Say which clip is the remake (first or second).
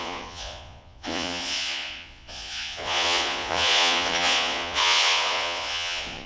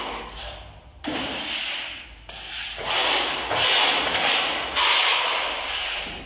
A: first